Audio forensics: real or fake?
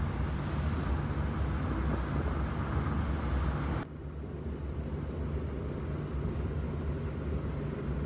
real